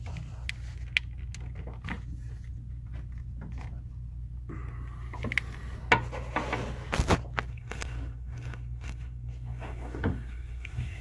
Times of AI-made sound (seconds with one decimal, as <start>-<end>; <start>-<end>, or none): 7.5-11.0